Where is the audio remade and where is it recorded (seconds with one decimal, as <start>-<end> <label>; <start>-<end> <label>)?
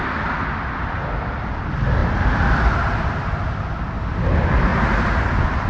0.0-5.7 recorded